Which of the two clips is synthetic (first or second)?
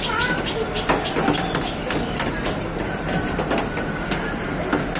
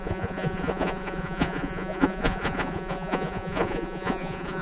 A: second